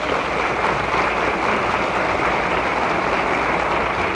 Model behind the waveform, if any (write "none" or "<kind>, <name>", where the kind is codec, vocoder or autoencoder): none